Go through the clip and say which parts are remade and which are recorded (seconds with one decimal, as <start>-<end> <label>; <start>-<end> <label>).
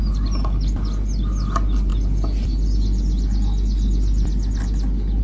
0.0-5.2 recorded